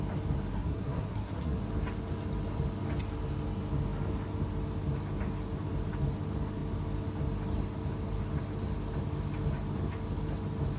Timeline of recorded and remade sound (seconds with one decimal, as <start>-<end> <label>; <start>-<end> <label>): 0.0-0.5 recorded; 0.5-1.6 remade; 1.6-10.8 recorded